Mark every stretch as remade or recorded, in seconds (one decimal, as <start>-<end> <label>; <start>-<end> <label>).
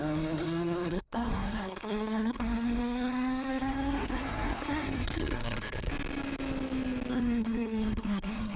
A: 0.0-5.9 remade; 5.9-7.1 recorded; 7.1-8.6 remade